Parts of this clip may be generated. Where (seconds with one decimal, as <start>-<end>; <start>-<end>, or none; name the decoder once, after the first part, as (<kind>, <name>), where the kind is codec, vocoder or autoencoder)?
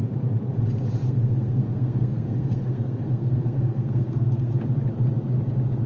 1.0-4.5 (codec, SNAC)